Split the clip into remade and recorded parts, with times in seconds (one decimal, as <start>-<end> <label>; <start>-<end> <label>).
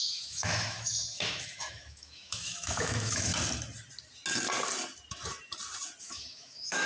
0.0-3.3 remade; 3.3-6.0 recorded; 6.0-6.9 remade